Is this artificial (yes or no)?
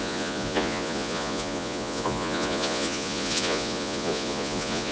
yes